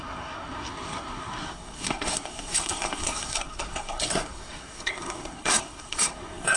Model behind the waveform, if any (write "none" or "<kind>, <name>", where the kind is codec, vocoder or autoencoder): codec, SNAC